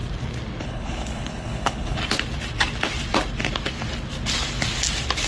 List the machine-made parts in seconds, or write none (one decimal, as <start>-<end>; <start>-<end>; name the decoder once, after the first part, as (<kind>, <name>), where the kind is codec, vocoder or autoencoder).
0.6-2.0 (codec, HILCodec)